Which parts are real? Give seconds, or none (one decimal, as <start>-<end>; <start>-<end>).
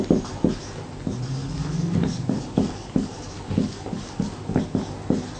0.0-1.4; 4.6-5.4